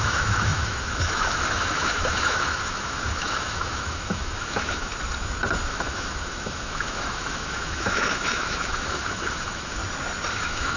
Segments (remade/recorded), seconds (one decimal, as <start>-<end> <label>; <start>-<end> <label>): 0.0-4.9 remade; 4.9-5.7 recorded; 5.7-9.8 remade; 9.8-10.3 recorded; 10.3-10.8 remade